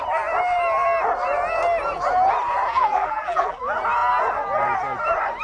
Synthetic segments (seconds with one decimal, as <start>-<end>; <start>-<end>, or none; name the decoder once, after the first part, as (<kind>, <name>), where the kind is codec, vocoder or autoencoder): 2.7-3.6 (vocoder, BigVGAN v2)